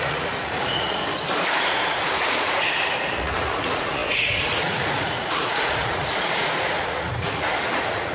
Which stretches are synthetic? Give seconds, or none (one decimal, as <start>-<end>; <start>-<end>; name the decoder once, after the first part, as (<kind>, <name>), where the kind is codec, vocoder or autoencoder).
0.0-1.0 (vocoder, Vocos); 1.6-8.1